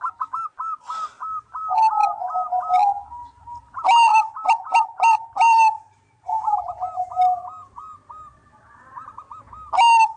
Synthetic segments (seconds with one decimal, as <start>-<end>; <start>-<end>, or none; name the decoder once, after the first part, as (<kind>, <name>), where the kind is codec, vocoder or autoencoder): 4.1-6.6 (vocoder, BigVGAN v2)